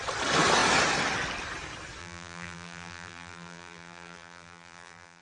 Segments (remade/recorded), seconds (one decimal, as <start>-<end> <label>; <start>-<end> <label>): 0.0-2.0 recorded; 2.0-5.2 remade